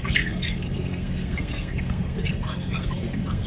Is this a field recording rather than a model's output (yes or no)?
no